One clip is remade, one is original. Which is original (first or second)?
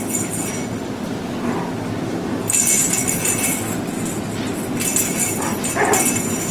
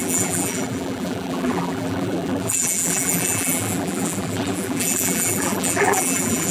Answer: first